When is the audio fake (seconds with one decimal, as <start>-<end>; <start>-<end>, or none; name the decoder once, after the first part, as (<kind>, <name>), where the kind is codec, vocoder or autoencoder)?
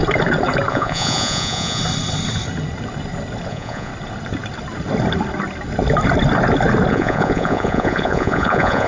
0.7-1.8 (vocoder, Vocos); 3.5-3.9; 6.9-8.9